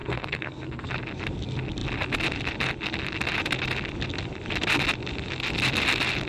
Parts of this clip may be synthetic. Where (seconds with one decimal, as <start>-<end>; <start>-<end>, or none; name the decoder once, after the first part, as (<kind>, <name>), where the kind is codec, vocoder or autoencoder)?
0.0-0.9 (codec, SNAC)